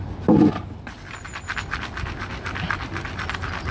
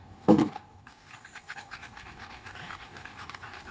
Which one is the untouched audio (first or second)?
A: first